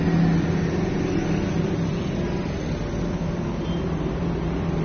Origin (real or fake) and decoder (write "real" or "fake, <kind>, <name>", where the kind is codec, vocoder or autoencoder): real